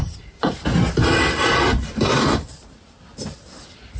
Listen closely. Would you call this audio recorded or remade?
recorded